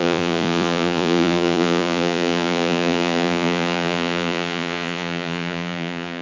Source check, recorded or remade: remade